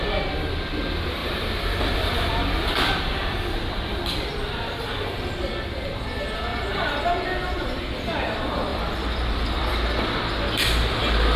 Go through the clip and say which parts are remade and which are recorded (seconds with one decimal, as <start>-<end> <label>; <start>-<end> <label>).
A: 0.0-1.2 recorded; 1.2-4.0 remade; 4.0-6.5 recorded; 6.5-7.8 remade; 7.8-8.7 recorded; 8.7-9.7 remade; 9.7-11.4 recorded